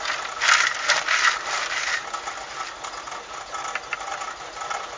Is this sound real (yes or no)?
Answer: yes